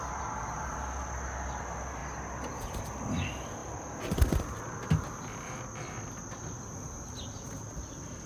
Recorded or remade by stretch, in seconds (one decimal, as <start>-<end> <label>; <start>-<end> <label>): 0.0-8.3 recorded